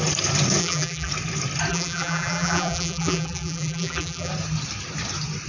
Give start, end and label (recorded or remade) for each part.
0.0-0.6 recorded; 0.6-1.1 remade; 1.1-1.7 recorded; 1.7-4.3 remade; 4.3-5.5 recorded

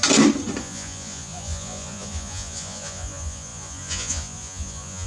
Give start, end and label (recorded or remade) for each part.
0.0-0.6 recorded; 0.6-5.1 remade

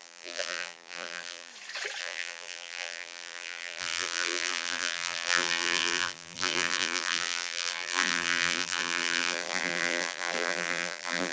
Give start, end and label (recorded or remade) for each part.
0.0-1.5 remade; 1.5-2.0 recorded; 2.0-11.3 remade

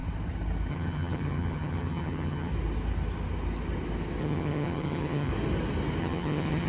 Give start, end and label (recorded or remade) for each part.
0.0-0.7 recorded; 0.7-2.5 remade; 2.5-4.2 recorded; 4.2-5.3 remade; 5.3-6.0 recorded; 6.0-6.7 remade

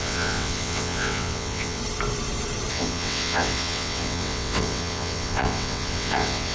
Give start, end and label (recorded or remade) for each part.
0.0-1.8 remade; 1.8-2.7 recorded; 2.7-6.5 remade

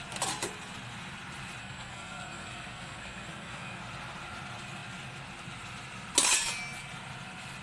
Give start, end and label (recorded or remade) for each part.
0.0-1.6 recorded; 1.6-3.8 remade; 3.8-7.6 recorded

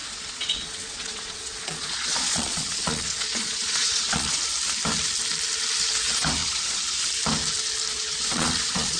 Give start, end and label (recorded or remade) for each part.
0.0-4.4 remade; 4.4-6.4 recorded; 6.4-7.0 remade; 7.0-7.9 recorded; 7.9-9.0 remade